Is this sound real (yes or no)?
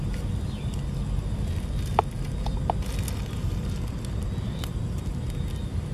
yes